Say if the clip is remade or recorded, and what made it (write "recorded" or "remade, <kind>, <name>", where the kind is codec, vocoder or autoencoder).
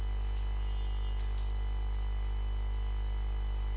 recorded